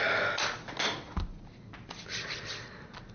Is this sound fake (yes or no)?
no